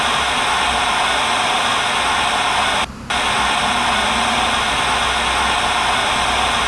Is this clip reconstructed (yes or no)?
no